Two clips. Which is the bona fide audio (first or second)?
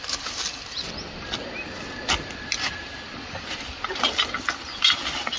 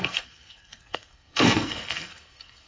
first